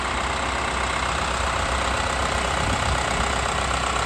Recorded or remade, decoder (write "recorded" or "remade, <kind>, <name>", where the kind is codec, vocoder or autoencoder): recorded